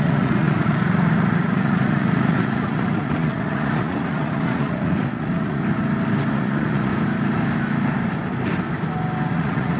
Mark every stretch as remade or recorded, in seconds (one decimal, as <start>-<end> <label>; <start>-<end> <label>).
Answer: 0.0-5.6 remade; 5.6-6.3 recorded; 6.3-6.9 remade; 6.9-9.3 recorded; 9.3-9.8 remade